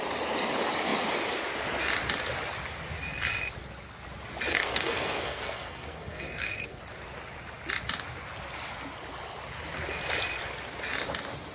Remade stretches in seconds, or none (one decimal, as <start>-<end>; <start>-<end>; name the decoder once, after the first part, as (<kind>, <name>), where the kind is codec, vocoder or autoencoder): 4.5-6.8 (codec, SNAC)